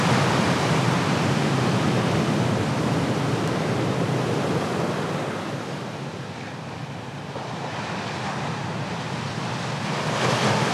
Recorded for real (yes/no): yes